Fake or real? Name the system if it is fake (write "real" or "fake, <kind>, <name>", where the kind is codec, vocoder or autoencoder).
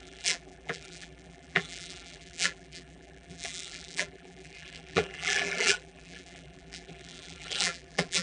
fake, vocoder, BigVGAN v2